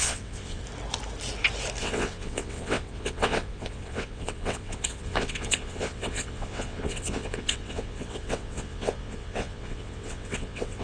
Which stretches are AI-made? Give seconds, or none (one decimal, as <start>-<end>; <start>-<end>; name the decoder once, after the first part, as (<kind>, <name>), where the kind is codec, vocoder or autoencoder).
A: 0.0-0.6 (vocoder, WaveNeXt); 1.8-10.8